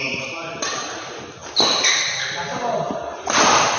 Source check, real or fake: real